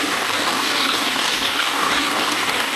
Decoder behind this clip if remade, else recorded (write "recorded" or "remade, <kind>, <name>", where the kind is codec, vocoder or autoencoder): remade, codec, DAC